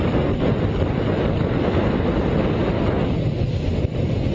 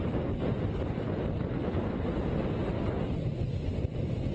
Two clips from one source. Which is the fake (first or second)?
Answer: second